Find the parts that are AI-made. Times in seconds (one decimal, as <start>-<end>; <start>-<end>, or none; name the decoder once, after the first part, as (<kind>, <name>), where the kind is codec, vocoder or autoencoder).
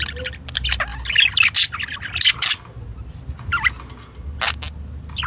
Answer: none